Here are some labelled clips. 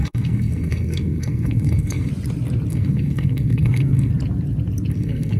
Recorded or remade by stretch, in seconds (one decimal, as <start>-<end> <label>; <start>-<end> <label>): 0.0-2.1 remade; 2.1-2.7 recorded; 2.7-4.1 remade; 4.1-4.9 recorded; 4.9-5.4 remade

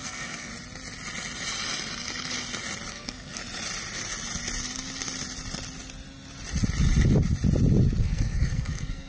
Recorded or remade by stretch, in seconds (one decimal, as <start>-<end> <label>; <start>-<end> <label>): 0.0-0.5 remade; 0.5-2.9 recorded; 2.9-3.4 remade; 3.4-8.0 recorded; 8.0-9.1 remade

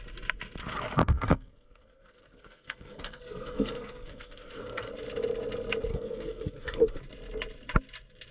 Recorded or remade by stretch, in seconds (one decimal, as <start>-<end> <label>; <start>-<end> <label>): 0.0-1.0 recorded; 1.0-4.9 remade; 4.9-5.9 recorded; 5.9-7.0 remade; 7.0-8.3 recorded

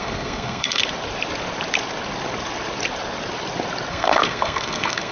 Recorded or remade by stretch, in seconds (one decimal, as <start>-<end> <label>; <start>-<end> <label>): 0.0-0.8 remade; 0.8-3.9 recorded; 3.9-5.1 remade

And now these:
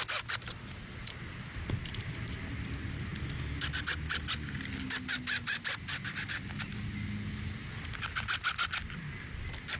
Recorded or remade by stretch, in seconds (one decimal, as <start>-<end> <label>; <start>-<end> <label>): 0.0-9.8 recorded

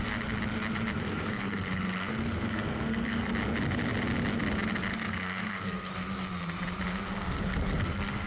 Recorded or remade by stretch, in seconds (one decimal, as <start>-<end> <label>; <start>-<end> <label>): 0.0-1.0 recorded; 1.0-3.3 remade; 3.3-4.9 recorded; 4.9-5.9 remade; 5.9-7.1 recorded; 7.1-8.3 remade